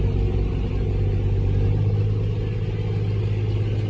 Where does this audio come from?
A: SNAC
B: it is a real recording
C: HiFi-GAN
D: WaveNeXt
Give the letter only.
B